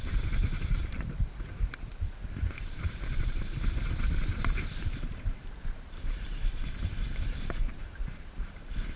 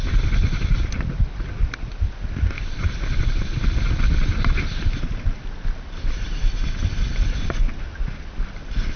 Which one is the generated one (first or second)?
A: first